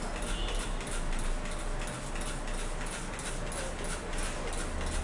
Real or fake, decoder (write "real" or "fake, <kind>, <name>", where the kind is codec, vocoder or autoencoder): real